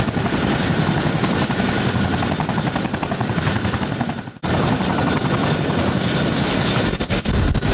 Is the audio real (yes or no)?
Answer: yes